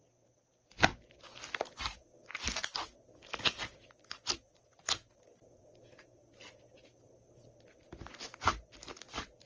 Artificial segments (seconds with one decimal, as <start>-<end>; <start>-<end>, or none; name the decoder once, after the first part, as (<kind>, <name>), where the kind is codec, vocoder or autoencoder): none